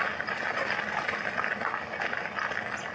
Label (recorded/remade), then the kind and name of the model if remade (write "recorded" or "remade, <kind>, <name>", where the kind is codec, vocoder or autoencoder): recorded